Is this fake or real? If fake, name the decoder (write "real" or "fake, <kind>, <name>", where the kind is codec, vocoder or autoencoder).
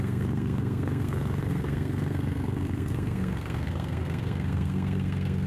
fake, codec, SNAC